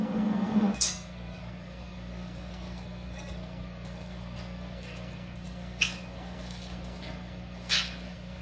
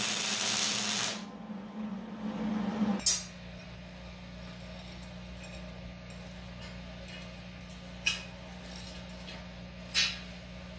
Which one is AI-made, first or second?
first